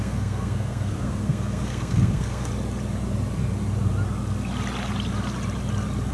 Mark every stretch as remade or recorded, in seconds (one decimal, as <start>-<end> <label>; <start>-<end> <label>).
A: 0.0-2.5 remade; 2.5-6.1 recorded

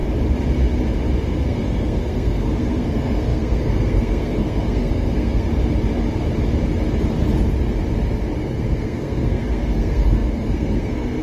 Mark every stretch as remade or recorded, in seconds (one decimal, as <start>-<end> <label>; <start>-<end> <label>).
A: 0.0-1.2 recorded; 1.2-5.5 remade; 5.5-8.4 recorded; 8.4-11.2 remade